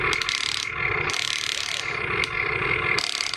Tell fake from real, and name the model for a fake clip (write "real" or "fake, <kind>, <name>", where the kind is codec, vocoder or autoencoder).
real